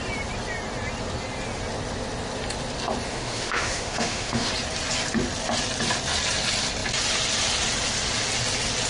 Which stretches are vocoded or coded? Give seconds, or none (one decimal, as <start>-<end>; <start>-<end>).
3.1-4.5